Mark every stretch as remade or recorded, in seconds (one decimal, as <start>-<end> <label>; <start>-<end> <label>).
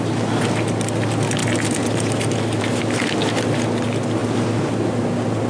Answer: 0.0-5.5 recorded